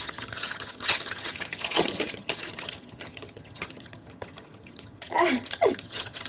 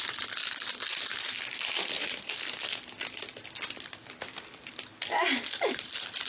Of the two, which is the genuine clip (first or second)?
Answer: second